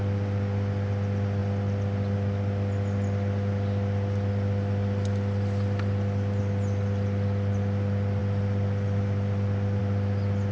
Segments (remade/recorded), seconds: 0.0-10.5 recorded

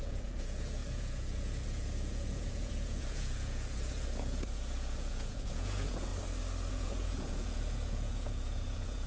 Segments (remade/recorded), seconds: 0.0-6.1 remade; 6.1-6.7 recorded; 6.7-9.1 remade

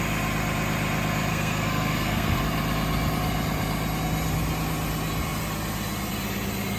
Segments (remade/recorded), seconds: 0.0-1.3 recorded; 1.3-2.4 remade; 2.4-6.8 recorded

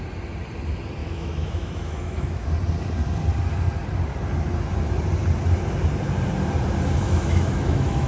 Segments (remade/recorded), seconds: 0.0-1.0 recorded; 1.0-2.5 remade; 2.5-7.0 recorded; 7.0-8.1 remade

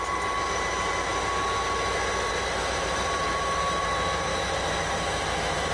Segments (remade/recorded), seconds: 0.0-1.1 remade; 1.1-2.3 recorded; 2.3-4.3 remade; 4.3-5.7 recorded

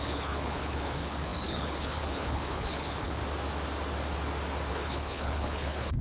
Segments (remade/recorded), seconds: 0.0-3.2 remade; 3.2-4.7 recorded; 4.7-6.0 remade

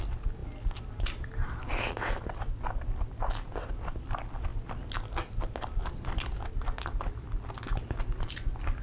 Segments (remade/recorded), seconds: 0.0-8.8 recorded